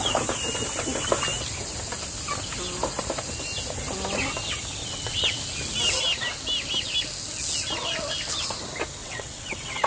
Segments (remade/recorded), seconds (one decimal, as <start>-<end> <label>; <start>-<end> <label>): 0.0-4.8 recorded; 4.8-5.4 remade; 5.4-9.0 recorded; 9.0-9.9 remade